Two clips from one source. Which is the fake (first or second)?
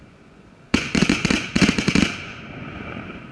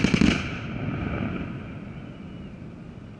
first